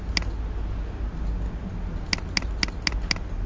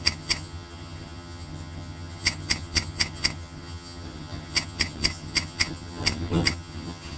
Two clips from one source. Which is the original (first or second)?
first